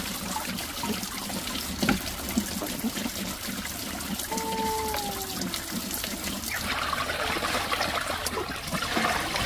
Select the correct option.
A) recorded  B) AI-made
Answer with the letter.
A